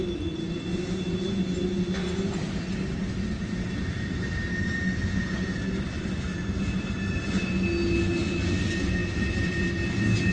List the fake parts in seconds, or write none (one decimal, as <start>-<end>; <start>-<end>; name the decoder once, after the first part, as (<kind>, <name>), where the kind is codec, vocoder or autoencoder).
none